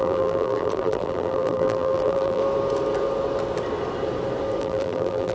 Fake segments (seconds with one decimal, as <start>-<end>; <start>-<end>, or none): 0.0-2.4; 4.6-5.3